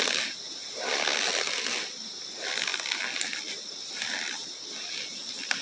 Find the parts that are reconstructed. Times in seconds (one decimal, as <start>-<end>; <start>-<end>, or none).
none

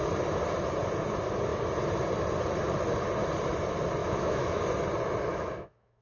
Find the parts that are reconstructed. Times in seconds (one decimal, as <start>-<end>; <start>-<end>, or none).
4.0-4.6; 5.3-6.0